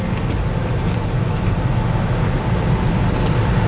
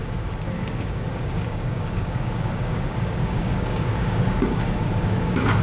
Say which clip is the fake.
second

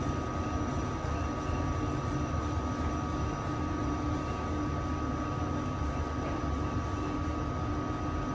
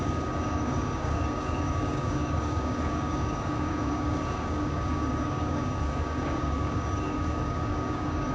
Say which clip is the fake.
second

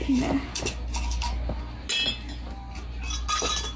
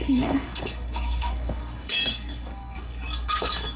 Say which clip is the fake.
second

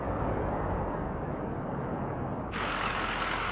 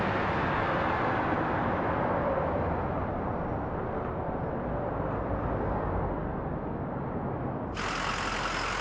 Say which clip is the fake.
first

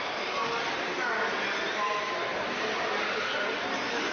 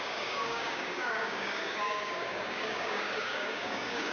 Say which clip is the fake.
second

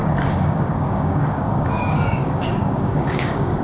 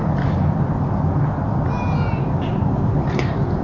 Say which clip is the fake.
first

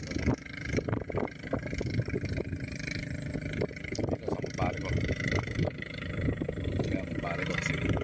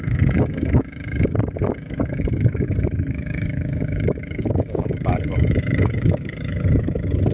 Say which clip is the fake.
second